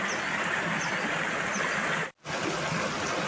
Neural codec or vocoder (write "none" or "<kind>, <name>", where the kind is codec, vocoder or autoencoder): none